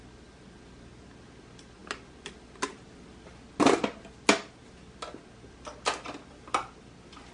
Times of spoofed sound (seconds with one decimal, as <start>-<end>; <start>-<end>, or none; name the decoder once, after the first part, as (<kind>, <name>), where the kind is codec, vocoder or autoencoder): none